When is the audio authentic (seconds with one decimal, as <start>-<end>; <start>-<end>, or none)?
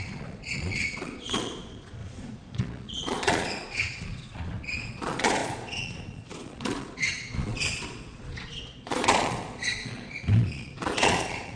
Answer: none